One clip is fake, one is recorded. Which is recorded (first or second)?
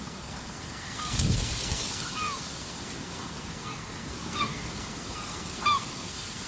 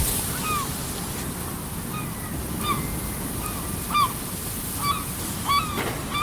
second